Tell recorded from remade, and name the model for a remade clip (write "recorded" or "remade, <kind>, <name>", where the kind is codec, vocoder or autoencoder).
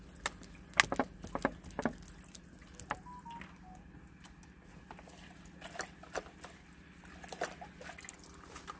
recorded